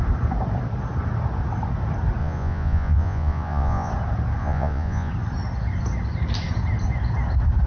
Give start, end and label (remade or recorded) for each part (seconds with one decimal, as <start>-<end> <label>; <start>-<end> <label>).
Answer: 0.0-2.2 recorded; 2.2-3.9 remade; 3.9-4.4 recorded; 4.4-5.1 remade; 5.1-7.7 recorded

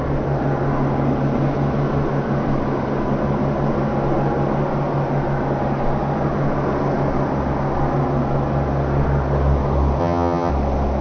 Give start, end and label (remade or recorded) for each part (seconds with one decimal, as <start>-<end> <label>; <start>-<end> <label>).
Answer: 0.0-10.0 recorded; 10.0-10.5 remade; 10.5-11.0 recorded

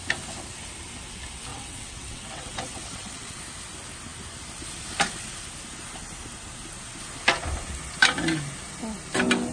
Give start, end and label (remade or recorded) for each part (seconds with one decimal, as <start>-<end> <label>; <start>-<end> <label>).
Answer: 0.0-1.5 recorded; 1.5-3.4 remade; 3.4-9.5 recorded

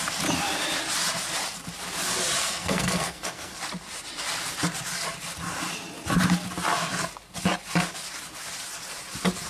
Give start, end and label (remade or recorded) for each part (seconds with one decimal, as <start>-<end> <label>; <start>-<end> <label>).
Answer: 0.0-2.4 recorded; 2.4-3.6 remade; 3.6-9.5 recorded